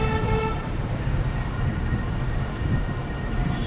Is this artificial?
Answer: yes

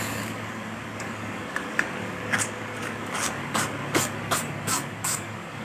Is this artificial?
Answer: yes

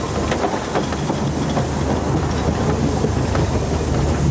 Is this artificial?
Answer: no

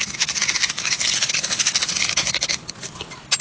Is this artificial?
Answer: no